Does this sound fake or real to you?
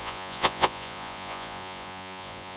fake